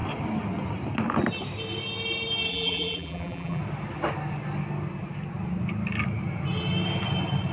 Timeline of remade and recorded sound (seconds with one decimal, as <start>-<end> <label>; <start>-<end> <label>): 0.0-2.5 recorded; 2.5-3.6 remade; 3.6-7.5 recorded